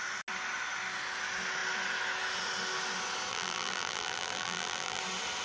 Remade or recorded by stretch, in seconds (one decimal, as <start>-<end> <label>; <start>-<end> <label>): 0.0-3.3 recorded; 3.3-5.0 remade; 5.0-5.4 recorded